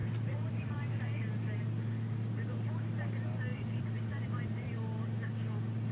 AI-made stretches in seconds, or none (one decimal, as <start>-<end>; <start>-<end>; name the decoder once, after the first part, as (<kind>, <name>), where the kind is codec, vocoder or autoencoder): 0.0-1.0 (vocoder, BigVGAN v2); 3.5-4.7